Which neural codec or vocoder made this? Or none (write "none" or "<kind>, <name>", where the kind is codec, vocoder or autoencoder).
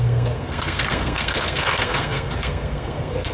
codec, SNAC